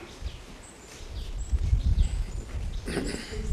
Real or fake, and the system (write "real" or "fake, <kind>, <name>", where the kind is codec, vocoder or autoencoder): real